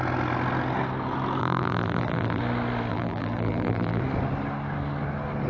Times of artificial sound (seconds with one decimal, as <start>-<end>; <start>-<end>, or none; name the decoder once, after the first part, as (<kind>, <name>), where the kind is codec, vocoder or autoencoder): 1.4-2.4 (vocoder, BigVGAN v2); 2.9-4.0

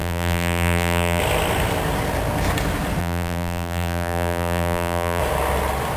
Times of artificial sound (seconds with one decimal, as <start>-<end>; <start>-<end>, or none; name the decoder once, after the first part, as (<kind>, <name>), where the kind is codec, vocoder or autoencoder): 0.0-1.2 (vocoder, BigVGAN v2); 3.0-5.2

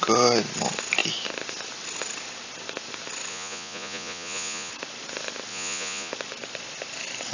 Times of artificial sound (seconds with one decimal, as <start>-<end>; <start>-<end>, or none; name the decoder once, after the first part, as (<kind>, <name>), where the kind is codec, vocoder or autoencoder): 3.3-4.7 (vocoder, Vocos); 5.5-6.1